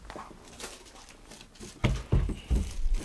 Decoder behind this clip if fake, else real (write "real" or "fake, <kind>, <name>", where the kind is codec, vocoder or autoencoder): real